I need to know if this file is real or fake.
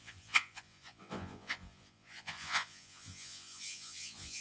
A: fake